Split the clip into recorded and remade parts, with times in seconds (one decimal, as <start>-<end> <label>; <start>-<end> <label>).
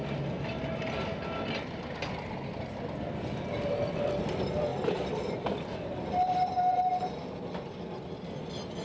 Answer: 0.0-8.8 recorded